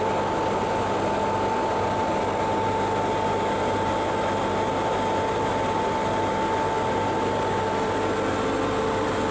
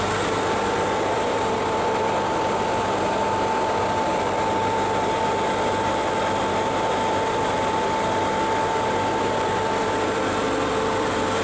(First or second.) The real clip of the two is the first